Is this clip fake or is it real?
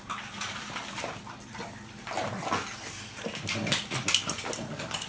real